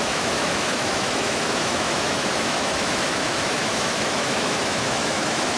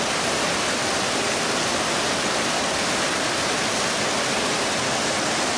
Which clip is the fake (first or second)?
first